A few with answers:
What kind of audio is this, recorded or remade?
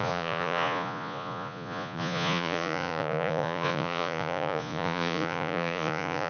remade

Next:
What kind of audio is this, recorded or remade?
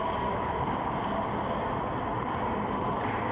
recorded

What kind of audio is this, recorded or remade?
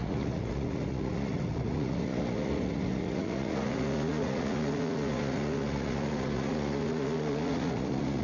remade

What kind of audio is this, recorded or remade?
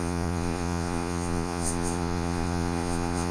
remade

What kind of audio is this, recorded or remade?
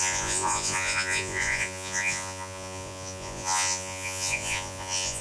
remade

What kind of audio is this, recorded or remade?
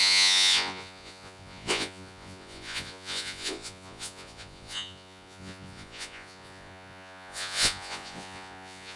remade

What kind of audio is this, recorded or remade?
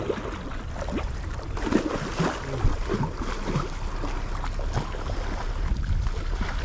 recorded